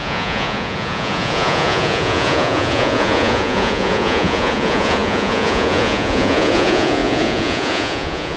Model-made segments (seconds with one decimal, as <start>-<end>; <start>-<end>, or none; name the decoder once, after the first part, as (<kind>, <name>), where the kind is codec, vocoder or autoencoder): 0.0-8.4 (vocoder, Vocos)